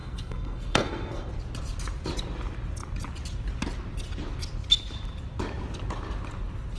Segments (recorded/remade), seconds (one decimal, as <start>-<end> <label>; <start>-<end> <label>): 0.0-1.3 remade; 1.3-6.8 recorded